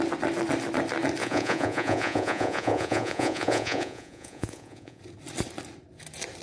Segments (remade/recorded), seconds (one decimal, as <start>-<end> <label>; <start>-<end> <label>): 0.0-1.2 recorded; 1.2-5.0 remade; 5.0-6.4 recorded